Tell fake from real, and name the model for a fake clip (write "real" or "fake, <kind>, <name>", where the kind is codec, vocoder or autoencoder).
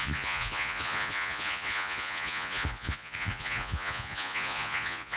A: fake, vocoder, Vocos